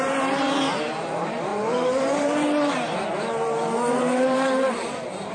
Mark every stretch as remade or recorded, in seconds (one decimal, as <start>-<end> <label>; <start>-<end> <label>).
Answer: 0.0-5.3 remade